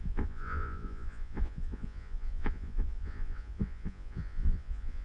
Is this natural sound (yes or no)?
no